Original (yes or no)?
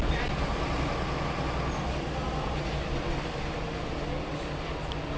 yes